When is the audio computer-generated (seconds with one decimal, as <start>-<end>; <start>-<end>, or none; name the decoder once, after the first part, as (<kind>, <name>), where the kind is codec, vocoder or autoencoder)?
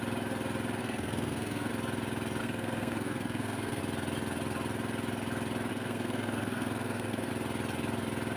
0.8-1.7 (codec, SNAC); 2.4-3.8; 5.7-7.3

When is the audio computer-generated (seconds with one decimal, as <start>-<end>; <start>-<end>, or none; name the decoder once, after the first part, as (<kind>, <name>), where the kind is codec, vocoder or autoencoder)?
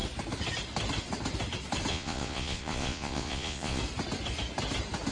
1.9-3.8 (vocoder, Vocos)